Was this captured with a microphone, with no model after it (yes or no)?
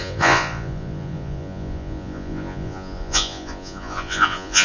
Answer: no